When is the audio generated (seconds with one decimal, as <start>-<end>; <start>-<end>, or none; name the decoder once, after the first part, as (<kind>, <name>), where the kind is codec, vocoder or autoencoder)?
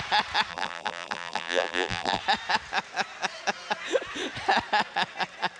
0.5-2.2 (vocoder, BigVGAN v2)